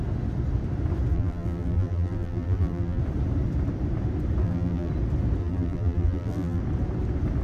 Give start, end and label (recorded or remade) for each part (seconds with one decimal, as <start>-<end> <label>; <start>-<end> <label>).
0.0-1.1 recorded; 1.1-3.0 remade; 3.0-4.4 recorded; 4.4-4.9 remade; 4.9-5.4 recorded; 5.4-6.6 remade; 6.6-7.4 recorded